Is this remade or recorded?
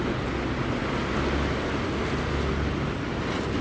recorded